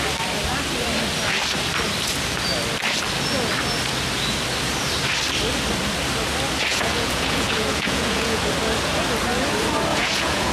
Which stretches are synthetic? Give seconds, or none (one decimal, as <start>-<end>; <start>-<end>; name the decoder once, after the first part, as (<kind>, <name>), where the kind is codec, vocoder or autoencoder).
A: 6.7-8.4 (vocoder, Vocos); 9.9-10.5